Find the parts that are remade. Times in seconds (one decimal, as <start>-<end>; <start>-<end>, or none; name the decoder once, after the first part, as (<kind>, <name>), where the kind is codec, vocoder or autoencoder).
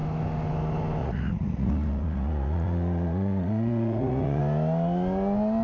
1.0-4.4 (vocoder, Vocos)